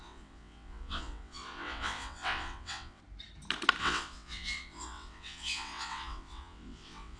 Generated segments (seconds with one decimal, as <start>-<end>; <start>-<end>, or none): 0.0-3.0; 3.8-7.2